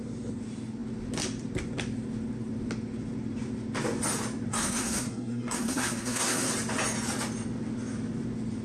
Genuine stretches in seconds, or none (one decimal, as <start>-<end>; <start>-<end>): 0.0-4.5; 6.5-8.6